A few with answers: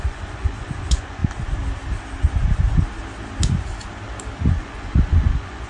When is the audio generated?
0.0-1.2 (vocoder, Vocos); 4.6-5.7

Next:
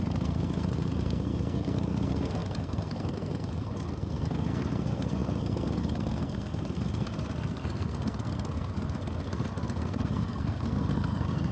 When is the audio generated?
0.0-11.5 (codec, SNAC)